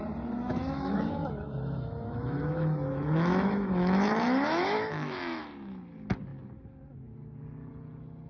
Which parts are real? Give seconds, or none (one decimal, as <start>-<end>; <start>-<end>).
0.0-0.4; 5.4-8.3